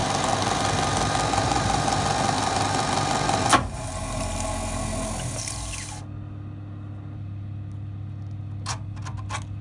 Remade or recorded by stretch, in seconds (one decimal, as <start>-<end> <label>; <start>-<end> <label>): 0.0-9.6 recorded